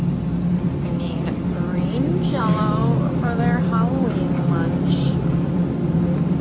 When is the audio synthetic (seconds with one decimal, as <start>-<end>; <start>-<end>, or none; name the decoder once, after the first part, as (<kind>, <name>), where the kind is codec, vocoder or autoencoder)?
0.0-6.4 (vocoder, BigVGAN v2)